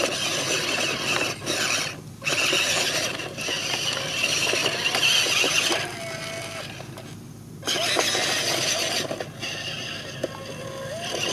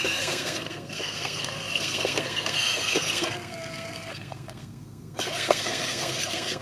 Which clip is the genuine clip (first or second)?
first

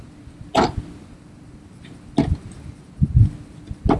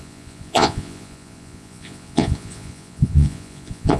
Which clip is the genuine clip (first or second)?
first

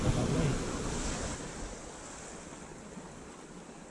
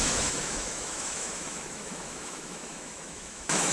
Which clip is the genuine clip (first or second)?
first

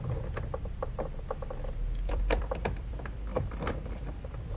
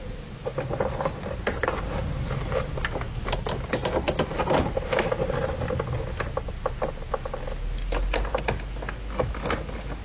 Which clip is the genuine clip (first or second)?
second